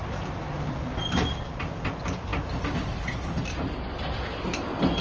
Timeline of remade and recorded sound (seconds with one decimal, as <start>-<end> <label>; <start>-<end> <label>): 0.0-5.0 recorded